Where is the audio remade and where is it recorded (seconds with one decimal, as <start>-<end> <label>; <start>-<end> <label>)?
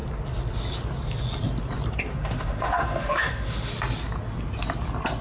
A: 0.0-2.1 recorded; 2.1-3.7 remade; 3.7-5.2 recorded